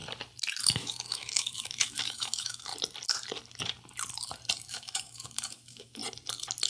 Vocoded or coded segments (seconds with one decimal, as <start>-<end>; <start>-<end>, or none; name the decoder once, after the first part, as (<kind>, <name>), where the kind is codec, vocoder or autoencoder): 0.6-2.7 (autoencoder, DAC-VAE); 4.7-6.0